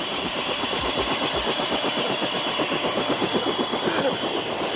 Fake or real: real